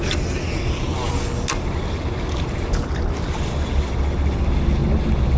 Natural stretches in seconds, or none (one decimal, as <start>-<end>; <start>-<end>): 0.0-5.4